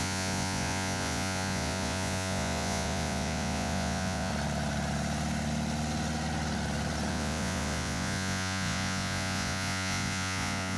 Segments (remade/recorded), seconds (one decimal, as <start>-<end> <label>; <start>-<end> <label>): 0.0-4.3 remade; 4.3-7.1 recorded; 7.1-10.8 remade